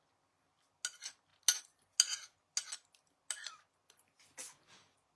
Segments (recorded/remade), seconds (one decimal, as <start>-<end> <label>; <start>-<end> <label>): 0.0-5.2 recorded